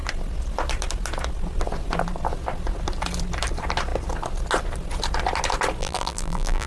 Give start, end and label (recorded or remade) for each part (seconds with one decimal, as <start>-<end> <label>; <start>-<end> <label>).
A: 0.0-5.8 recorded; 5.8-6.7 remade

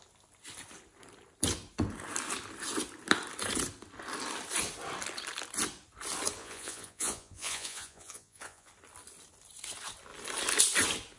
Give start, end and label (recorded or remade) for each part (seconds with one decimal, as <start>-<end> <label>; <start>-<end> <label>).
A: 0.0-6.4 recorded; 6.4-8.7 remade; 8.7-11.2 recorded

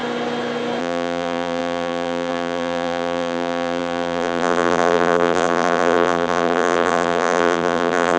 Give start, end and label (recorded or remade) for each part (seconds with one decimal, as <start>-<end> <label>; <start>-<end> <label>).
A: 0.0-0.8 recorded; 0.8-8.2 remade

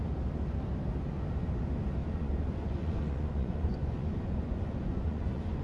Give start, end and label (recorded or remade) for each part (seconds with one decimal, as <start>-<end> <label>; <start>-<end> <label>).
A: 0.0-2.0 recorded; 2.0-5.6 remade

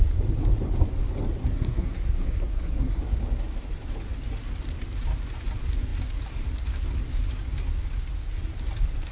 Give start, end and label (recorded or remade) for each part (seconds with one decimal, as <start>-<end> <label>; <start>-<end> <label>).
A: 0.0-1.4 recorded; 1.4-3.0 remade; 3.0-9.1 recorded

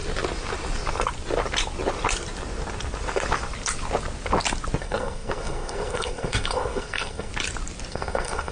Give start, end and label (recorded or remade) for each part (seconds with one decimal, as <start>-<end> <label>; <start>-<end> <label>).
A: 0.0-4.8 recorded; 4.8-7.3 remade; 7.3-7.9 recorded; 7.9-8.5 remade

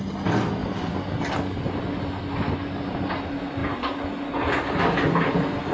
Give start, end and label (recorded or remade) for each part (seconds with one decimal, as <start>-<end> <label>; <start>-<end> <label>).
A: 0.0-5.7 recorded

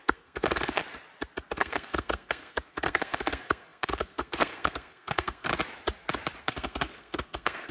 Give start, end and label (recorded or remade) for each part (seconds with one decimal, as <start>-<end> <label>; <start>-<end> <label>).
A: 0.0-0.8 remade; 0.8-1.5 recorded; 1.5-5.5 remade; 5.5-6.4 recorded; 6.4-7.7 remade